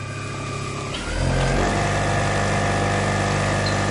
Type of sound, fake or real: real